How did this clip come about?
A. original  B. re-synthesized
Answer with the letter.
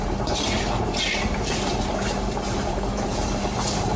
B